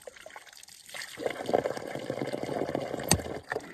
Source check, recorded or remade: remade